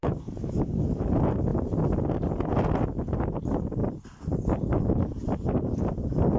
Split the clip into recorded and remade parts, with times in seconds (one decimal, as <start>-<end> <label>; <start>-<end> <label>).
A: 0.0-1.0 remade; 1.0-6.4 recorded